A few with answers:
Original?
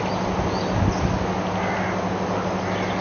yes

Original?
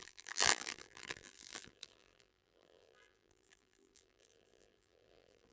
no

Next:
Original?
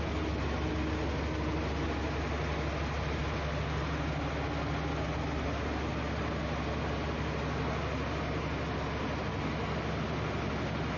yes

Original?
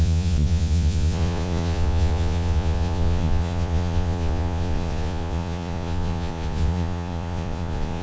no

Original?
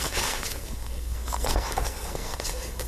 no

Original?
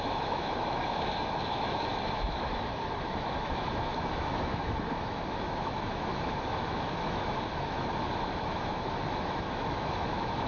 no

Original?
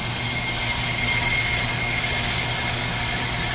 yes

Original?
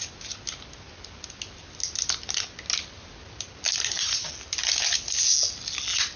yes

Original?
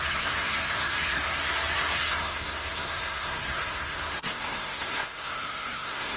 no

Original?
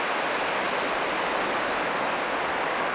yes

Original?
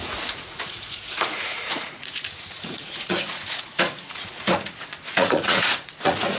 no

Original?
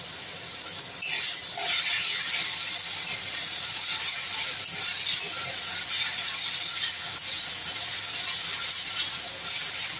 yes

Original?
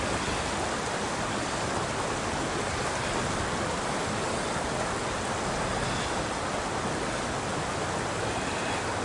yes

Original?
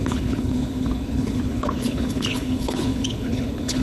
no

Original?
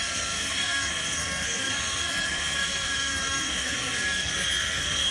no